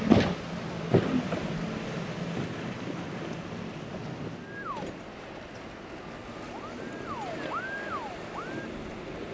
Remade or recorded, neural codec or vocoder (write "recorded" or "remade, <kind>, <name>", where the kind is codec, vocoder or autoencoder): recorded